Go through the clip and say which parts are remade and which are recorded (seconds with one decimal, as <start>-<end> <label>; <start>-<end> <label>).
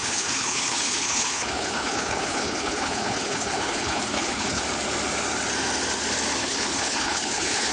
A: 0.0-4.6 remade; 4.6-6.4 recorded; 6.4-7.7 remade